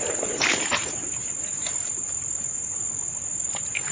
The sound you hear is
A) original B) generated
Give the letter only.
A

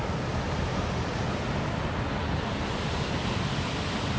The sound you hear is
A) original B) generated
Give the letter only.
A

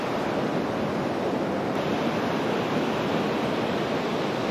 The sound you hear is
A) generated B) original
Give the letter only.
B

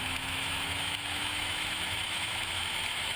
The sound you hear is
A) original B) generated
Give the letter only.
B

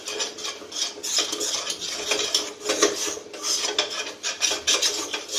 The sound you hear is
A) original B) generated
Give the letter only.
A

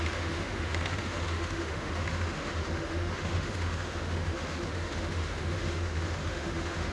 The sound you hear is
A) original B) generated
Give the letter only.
B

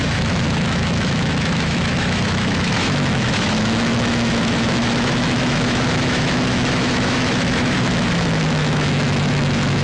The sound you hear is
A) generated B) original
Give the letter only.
A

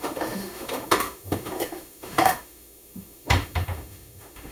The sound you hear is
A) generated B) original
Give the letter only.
A